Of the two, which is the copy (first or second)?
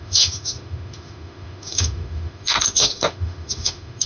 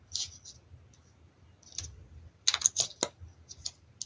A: first